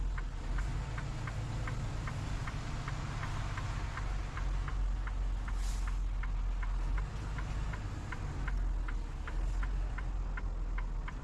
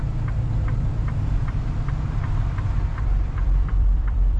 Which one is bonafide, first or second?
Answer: first